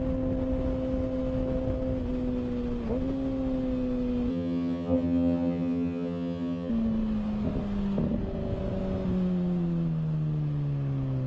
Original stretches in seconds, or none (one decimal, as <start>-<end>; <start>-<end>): 0.0-4.3; 6.7-11.3